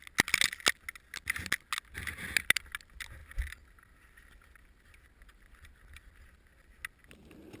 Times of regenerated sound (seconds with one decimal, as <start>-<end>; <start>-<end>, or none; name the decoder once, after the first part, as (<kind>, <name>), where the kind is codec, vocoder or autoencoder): none